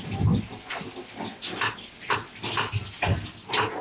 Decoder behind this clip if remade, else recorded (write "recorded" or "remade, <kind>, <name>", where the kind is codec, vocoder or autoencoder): recorded